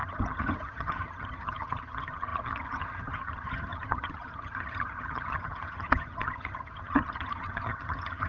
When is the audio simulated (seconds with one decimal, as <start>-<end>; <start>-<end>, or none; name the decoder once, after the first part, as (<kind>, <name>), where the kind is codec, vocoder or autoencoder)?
0.0-8.3 (vocoder, HiFi-GAN)